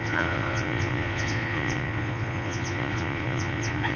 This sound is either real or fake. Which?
fake